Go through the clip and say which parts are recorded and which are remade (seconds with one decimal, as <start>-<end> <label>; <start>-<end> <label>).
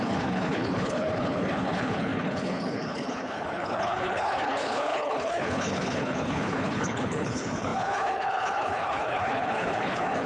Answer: 0.0-10.3 remade